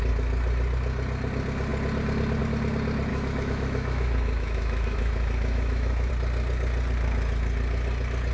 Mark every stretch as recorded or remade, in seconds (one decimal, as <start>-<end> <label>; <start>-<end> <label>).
0.0-3.1 recorded; 3.1-6.1 remade; 6.1-8.3 recorded